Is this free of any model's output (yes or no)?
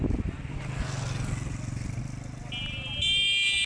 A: yes